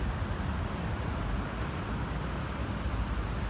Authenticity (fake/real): real